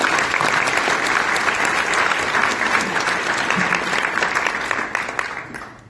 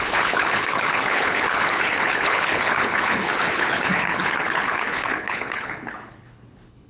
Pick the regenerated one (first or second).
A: second